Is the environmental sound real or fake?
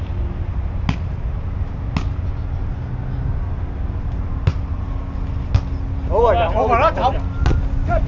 real